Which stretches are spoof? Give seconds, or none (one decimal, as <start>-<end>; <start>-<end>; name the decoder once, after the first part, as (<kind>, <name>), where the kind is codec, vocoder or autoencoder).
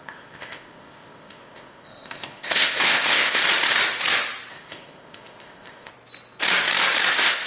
0.0-3.4 (codec, ZipCodec); 4.5-5.9; 7.1-7.5